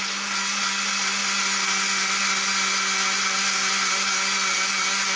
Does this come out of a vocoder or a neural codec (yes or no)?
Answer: no